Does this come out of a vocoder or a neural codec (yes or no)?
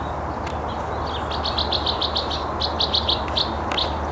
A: no